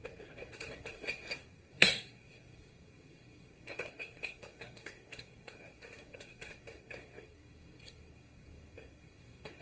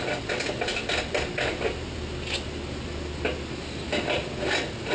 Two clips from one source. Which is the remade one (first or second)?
first